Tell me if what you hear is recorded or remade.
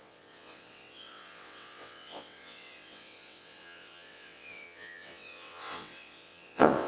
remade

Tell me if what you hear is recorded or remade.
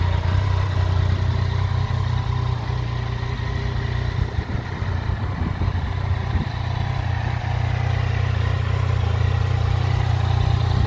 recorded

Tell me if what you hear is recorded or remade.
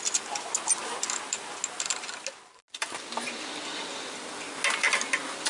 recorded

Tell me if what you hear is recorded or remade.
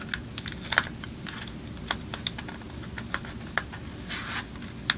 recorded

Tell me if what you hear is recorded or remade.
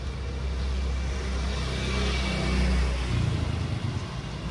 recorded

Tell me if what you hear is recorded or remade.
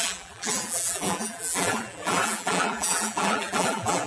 remade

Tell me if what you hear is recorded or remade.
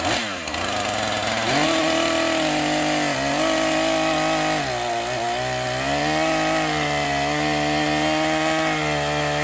recorded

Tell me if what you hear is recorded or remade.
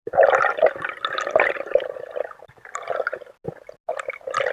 recorded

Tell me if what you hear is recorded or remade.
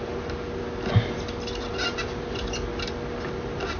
recorded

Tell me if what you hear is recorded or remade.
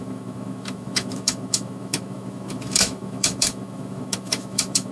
remade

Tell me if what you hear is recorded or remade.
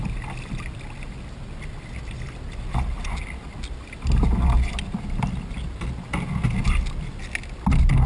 recorded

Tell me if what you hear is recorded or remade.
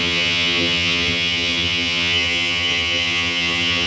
remade